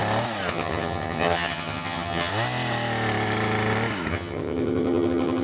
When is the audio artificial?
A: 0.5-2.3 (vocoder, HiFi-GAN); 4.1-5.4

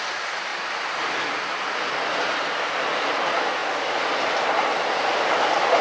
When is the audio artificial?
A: none

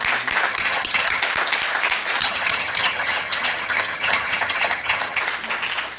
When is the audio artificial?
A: 0.5-1.2 (vocoder, HiFi-GAN); 2.2-5.2

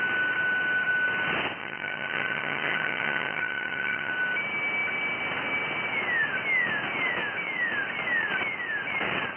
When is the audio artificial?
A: 1.6-4.1 (vocoder, HiFi-GAN)

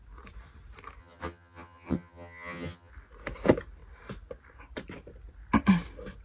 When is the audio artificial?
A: 1.0-2.9 (vocoder, HiFi-GAN)

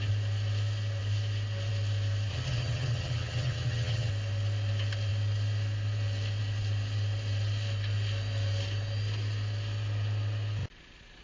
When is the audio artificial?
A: 2.3-4.1 (vocoder, HiFi-GAN)

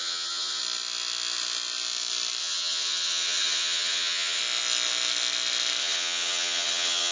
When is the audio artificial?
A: 0.0-0.6 (vocoder, HiFi-GAN); 2.4-4.4; 5.8-7.1

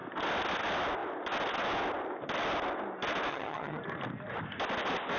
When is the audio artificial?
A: 3.3-3.8 (vocoder, HiFi-GAN)